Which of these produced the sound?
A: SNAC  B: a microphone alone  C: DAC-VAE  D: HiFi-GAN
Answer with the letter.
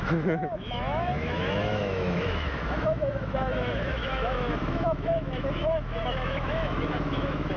C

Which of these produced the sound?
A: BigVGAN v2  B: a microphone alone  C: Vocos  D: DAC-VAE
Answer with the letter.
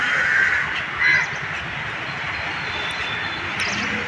B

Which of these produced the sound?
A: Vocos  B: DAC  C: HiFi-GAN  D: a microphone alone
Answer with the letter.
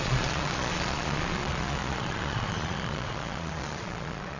A